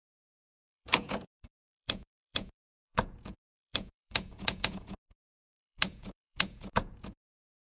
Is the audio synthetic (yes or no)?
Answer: yes